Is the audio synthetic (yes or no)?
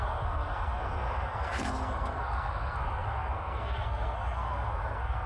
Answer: yes